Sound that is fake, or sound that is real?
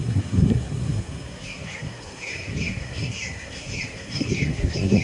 fake